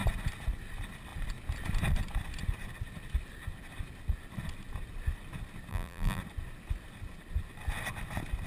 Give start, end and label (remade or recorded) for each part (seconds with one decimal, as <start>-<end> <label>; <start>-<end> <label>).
0.0-5.7 recorded; 5.7-6.2 remade; 6.2-8.5 recorded